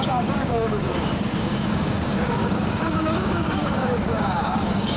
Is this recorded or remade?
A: remade